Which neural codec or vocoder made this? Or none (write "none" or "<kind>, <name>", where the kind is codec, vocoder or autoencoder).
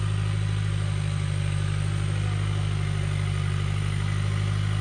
none